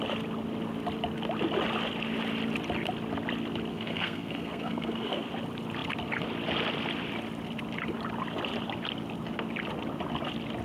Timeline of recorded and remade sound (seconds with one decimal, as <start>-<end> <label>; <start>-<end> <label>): 0.0-3.7 recorded; 3.7-5.3 remade; 5.3-10.6 recorded